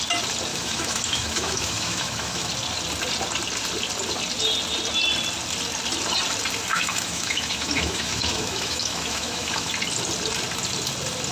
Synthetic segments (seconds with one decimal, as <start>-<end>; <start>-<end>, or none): 0.5-2.5; 6.7-9.7